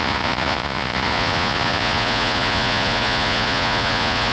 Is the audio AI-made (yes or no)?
yes